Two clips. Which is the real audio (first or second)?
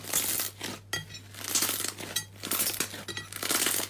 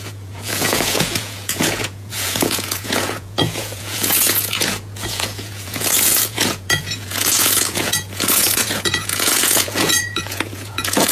first